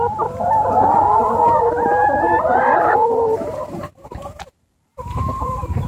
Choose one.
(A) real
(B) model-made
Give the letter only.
B